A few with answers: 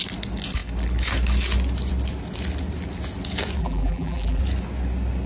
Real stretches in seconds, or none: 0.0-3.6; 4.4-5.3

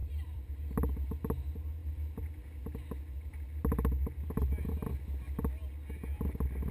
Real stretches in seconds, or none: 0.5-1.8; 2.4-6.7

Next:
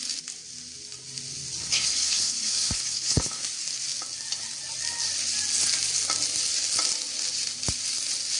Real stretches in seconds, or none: 0.0-1.6; 3.4-8.4